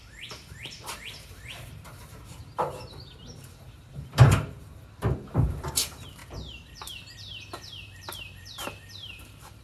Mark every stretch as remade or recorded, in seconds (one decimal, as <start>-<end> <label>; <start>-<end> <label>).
0.0-6.2 remade; 6.2-7.7 recorded; 7.7-9.6 remade

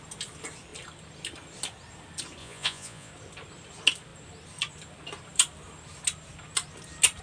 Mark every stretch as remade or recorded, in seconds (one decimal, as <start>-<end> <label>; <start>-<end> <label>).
0.0-2.4 recorded; 2.4-3.1 remade; 3.1-7.2 recorded

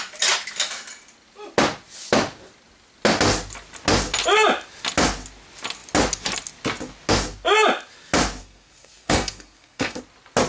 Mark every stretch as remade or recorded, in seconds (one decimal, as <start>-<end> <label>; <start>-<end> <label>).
0.0-8.4 recorded; 8.4-10.0 remade; 10.0-10.5 recorded

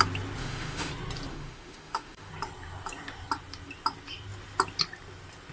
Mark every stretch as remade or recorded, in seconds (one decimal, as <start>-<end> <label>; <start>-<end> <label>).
0.0-0.4 recorded; 0.4-0.9 remade; 0.9-1.3 recorded; 1.3-2.3 remade; 2.3-5.5 recorded

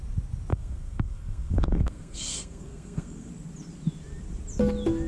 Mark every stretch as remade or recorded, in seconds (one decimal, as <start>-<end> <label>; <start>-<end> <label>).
0.0-0.5 recorded; 0.5-3.3 remade; 3.3-5.1 recorded

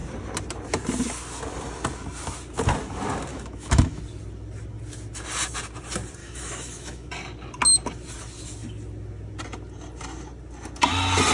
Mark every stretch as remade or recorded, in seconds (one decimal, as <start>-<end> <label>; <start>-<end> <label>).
0.0-3.3 recorded; 3.3-4.0 remade; 4.0-6.2 recorded; 6.2-7.1 remade; 7.1-11.3 recorded

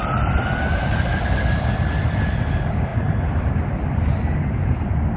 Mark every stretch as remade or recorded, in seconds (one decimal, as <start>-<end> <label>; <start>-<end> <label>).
0.0-5.2 recorded